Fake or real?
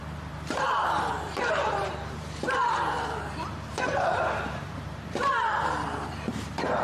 fake